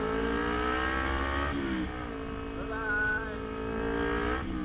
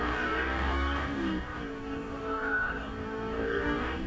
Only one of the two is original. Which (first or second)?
first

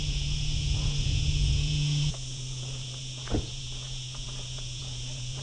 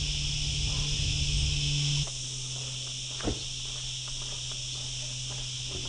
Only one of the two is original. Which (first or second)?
second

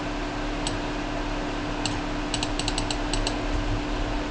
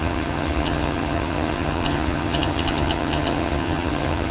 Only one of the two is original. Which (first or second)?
first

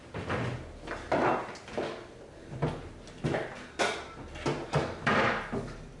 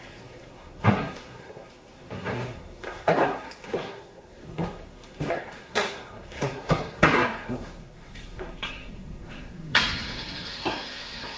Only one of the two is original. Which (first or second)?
first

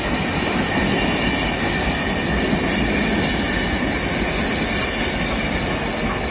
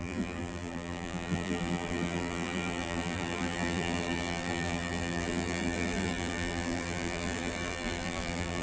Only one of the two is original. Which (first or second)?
first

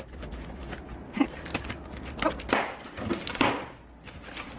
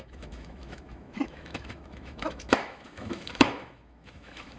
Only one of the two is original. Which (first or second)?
first